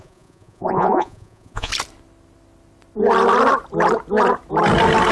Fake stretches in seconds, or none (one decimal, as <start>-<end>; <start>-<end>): 0.0-1.7